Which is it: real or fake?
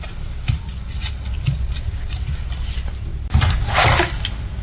real